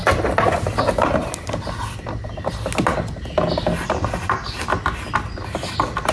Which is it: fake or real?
real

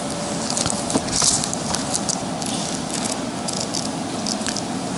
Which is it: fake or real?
real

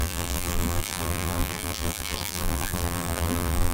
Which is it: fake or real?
fake